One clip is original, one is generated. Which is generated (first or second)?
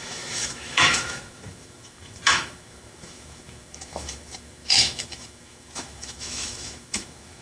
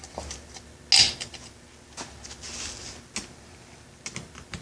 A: first